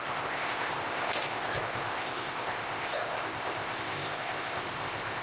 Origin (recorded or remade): remade